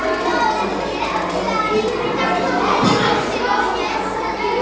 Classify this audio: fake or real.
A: real